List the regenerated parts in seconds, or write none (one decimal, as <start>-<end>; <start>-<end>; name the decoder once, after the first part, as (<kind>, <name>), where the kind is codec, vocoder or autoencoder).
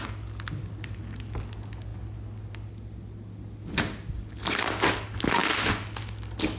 none